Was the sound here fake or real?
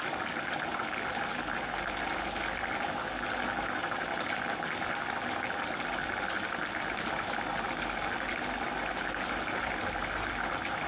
real